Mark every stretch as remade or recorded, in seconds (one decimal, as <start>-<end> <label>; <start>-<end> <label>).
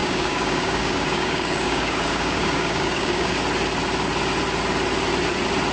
0.0-3.4 remade; 3.4-5.7 recorded